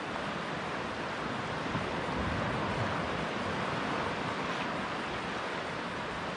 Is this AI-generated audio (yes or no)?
no